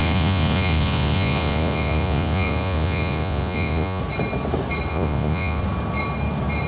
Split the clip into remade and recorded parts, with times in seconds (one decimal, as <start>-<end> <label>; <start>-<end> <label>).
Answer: 0.0-4.0 remade; 4.0-4.9 recorded; 4.9-5.6 remade; 5.6-6.7 recorded

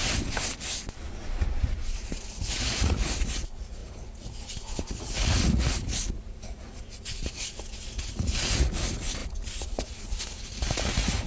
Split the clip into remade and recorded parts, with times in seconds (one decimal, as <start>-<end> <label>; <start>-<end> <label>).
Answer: 0.0-1.0 recorded; 1.0-11.3 remade